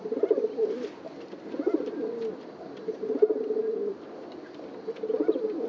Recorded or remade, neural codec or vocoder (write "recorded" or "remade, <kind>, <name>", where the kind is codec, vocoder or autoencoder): remade, vocoder, BigVGAN v2